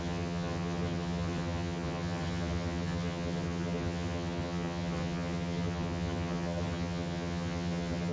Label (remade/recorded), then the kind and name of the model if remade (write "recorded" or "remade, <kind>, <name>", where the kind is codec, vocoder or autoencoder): remade, vocoder, HiFi-GAN